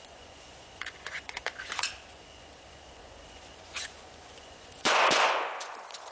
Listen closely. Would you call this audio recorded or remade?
remade